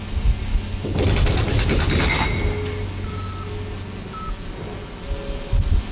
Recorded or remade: recorded